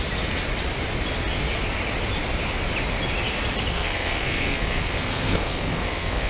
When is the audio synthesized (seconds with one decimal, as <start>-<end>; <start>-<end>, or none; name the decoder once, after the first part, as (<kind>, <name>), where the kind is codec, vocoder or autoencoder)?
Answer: 3.7-6.3 (codec, SNAC)